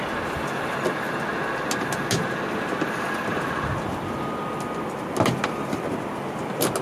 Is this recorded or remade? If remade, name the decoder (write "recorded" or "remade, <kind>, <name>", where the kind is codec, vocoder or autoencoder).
recorded